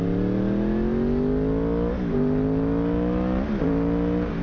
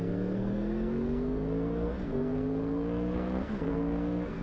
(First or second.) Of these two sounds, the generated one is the second